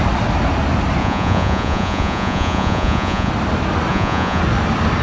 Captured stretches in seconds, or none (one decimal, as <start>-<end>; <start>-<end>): 0.0-1.0; 3.3-3.9; 4.4-5.0